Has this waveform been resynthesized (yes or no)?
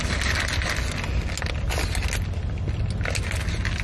no